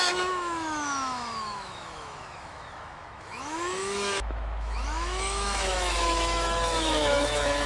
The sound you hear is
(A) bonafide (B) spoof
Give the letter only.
B